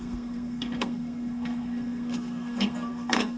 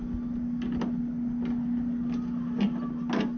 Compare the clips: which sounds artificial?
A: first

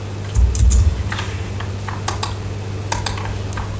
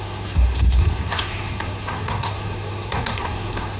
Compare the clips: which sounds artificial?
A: second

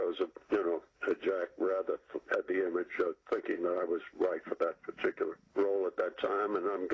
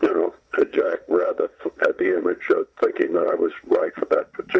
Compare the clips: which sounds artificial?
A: second